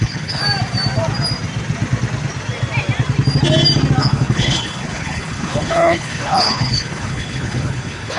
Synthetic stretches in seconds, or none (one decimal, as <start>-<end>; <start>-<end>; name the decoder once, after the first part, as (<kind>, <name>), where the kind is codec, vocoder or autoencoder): 0.0-0.4 (codec, HILCodec); 4.0-8.2

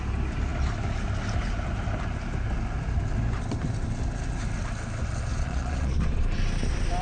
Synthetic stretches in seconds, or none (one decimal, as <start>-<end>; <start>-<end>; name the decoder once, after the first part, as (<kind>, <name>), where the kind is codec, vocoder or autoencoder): 5.3-6.2 (vocoder, Vocos)

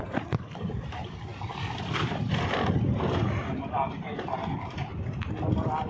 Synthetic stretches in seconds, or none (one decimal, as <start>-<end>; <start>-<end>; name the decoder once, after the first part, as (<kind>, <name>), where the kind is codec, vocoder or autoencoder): 0.0-4.9 (vocoder, BigVGAN v2)

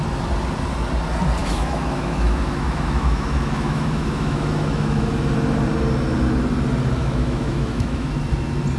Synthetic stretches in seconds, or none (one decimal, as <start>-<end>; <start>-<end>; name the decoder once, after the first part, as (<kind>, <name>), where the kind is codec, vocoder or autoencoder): 1.4-5.1 (autoencoder, DAC-VAE); 7.0-8.1

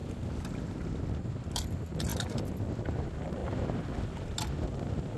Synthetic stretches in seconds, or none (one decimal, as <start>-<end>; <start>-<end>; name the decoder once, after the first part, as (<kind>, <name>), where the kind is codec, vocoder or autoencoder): none

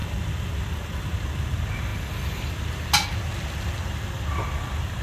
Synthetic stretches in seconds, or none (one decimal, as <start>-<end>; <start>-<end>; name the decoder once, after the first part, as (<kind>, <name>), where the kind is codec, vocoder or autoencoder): none